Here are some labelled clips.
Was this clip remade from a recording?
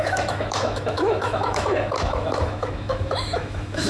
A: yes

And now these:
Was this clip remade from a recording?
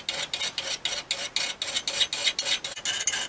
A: no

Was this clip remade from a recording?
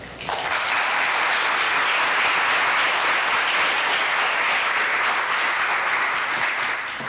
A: no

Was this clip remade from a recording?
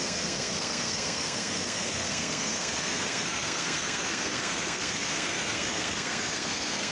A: yes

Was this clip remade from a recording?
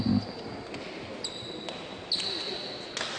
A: no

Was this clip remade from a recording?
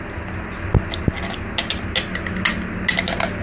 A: no